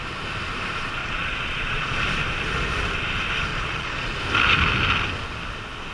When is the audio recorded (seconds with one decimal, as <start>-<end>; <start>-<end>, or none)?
0.0-1.0; 2.0-3.5; 4.2-5.9